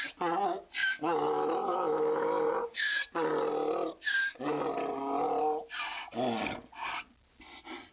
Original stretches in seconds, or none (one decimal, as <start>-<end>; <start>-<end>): 0.0-0.8; 2.5-7.9